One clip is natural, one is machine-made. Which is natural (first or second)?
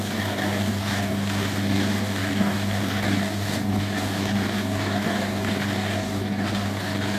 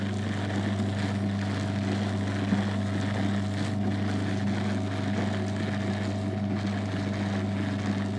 second